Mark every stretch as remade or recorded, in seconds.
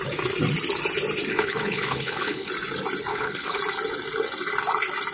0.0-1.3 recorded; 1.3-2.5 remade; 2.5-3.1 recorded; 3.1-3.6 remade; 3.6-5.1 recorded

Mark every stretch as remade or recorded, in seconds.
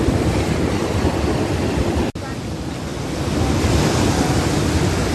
0.0-5.1 recorded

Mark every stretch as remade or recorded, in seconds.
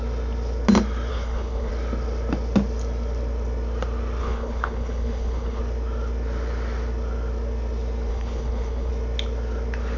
0.0-1.1 recorded; 1.1-1.7 remade; 1.7-4.2 recorded; 4.2-5.6 remade; 5.6-8.1 recorded; 8.1-8.9 remade; 8.9-10.0 recorded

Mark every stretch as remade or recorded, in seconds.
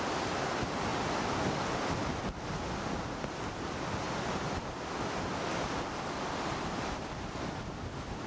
0.0-8.3 recorded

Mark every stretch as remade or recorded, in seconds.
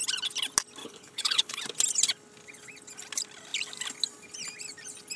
0.0-0.8 recorded; 0.8-1.6 remade; 1.6-5.2 recorded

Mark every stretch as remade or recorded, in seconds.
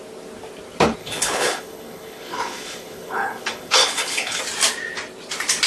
0.0-1.0 recorded; 1.0-4.4 remade; 4.4-5.7 recorded